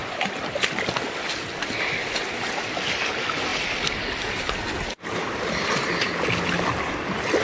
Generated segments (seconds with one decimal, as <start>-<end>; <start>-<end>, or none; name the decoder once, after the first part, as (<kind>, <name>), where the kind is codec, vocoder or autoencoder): none